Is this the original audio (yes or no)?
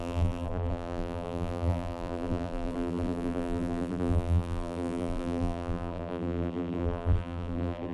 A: no